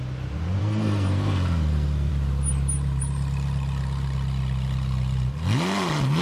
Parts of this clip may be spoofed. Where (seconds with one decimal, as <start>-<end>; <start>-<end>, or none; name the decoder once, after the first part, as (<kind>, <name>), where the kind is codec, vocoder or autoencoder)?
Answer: 0.6-2.1 (codec, SNAC)